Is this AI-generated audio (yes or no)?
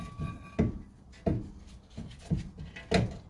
no